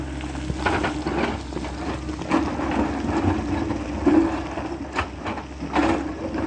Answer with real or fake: real